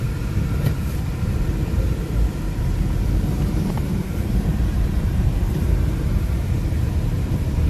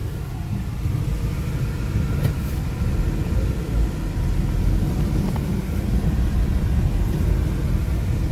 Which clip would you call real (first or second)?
second